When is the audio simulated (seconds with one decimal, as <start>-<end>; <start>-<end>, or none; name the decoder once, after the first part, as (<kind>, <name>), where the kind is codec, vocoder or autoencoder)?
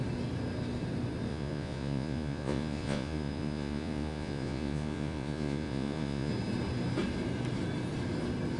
1.3-6.3 (vocoder, Vocos)